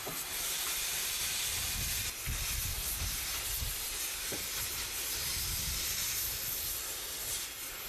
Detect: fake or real real